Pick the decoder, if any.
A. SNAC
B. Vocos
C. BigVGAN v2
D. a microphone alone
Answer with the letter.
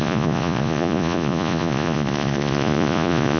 B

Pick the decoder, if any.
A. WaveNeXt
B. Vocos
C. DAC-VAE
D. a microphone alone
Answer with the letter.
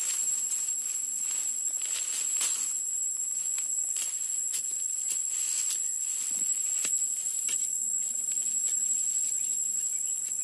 D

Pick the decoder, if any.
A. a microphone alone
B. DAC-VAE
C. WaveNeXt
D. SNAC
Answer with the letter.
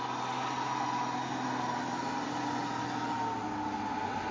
A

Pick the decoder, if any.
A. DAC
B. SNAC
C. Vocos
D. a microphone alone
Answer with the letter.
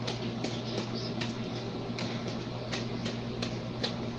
D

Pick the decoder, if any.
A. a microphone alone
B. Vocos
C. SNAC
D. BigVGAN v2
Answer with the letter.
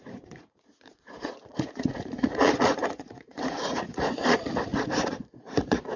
B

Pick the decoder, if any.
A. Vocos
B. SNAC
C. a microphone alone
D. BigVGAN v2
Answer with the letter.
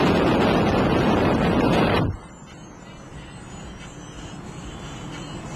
C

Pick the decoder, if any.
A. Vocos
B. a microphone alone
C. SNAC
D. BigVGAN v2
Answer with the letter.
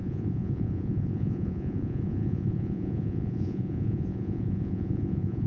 A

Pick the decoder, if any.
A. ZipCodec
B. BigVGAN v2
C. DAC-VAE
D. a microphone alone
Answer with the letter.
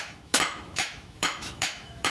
C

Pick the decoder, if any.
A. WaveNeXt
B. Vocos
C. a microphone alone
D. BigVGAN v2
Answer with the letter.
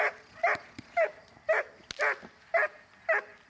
C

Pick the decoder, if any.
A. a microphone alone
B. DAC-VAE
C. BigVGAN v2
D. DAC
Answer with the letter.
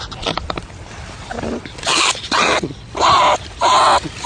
A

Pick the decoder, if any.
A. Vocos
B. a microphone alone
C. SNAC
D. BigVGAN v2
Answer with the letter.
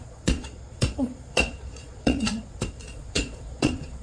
A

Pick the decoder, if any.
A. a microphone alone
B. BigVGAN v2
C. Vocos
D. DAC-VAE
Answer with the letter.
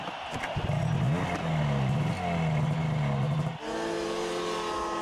A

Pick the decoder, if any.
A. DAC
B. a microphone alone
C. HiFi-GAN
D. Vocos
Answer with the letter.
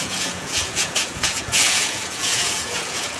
D